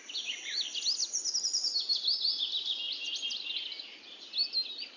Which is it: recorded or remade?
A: recorded